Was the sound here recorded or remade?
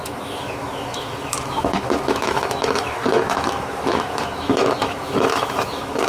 remade